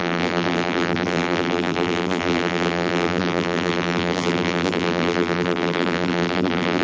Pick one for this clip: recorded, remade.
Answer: remade